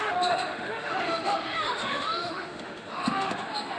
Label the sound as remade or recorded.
remade